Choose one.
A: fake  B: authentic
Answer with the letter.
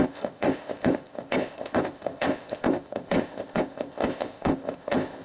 A